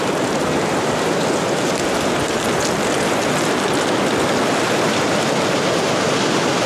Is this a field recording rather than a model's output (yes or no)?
yes